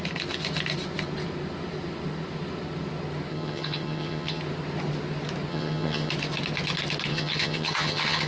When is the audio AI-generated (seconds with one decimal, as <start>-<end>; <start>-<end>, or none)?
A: 3.3-4.4; 5.5-6.1; 7.1-8.3